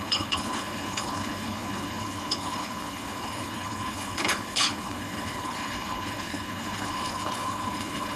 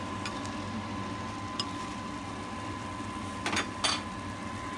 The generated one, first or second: first